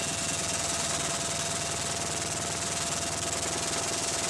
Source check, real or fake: real